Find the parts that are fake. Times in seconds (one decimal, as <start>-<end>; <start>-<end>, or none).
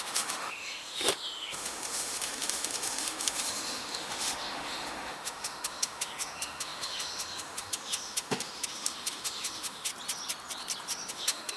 0.0-9.9; 11.1-11.6